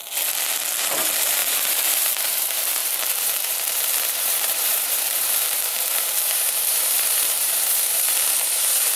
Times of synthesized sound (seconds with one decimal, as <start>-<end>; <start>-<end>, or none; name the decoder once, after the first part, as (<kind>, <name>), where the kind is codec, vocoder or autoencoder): 0.8-9.0 (vocoder, BigVGAN v2)